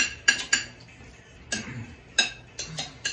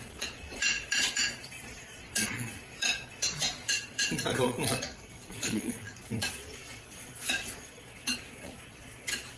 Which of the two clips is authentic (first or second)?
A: first